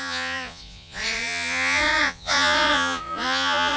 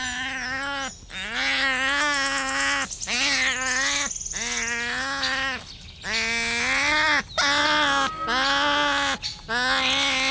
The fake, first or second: first